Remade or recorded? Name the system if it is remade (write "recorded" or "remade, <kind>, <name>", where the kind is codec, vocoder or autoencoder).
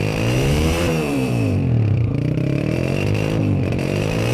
remade, vocoder, BigVGAN v2